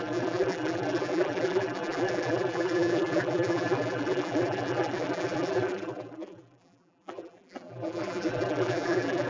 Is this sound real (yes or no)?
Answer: no